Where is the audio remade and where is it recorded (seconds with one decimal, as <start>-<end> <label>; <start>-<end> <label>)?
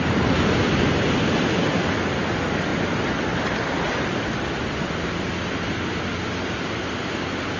0.0-7.6 recorded